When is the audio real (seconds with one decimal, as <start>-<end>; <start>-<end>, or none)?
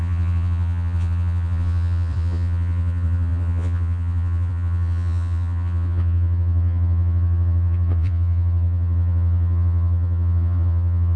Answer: none